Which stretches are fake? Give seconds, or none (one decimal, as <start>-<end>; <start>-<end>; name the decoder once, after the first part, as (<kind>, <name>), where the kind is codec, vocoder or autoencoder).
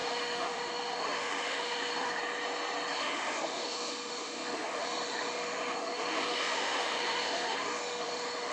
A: 0.0-2.2 (autoencoder, DAC-VAE); 3.0-8.5